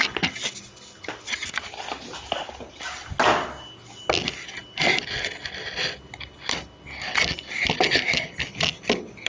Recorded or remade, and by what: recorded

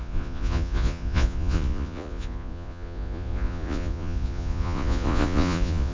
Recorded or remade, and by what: remade, vocoder, Vocos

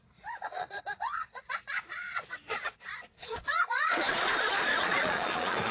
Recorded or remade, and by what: remade, vocoder, Vocos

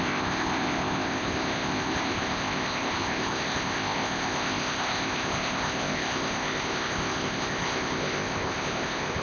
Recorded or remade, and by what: remade, codec, ZipCodec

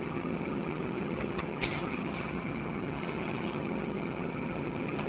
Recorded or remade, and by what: remade, vocoder, HiFi-GAN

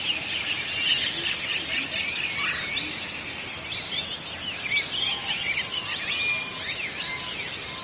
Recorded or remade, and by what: recorded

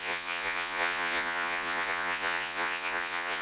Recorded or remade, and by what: remade, vocoder, Vocos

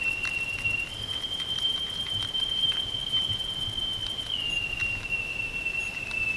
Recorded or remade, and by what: recorded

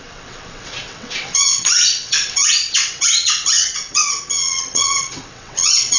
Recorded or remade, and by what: remade, vocoder, WaveNeXt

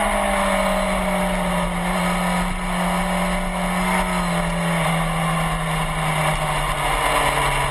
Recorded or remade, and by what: recorded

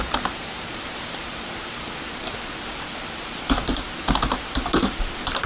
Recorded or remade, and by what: remade, vocoder, BigVGAN v2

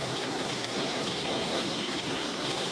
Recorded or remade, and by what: remade, codec, SNAC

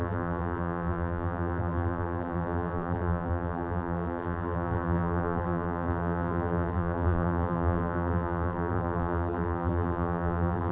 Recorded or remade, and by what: remade, vocoder, BigVGAN v2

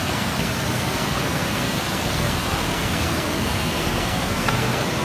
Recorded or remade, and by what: remade, codec, SNAC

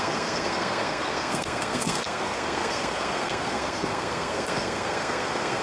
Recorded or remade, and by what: remade, codec, SNAC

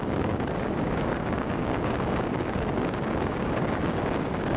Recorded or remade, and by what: remade, codec, DAC